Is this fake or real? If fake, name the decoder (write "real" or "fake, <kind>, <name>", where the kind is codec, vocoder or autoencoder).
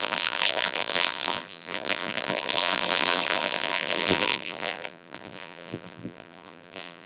fake, vocoder, BigVGAN v2